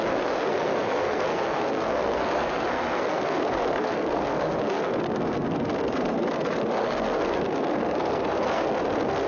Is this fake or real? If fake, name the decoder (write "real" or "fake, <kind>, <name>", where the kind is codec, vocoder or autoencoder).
fake, codec, SNAC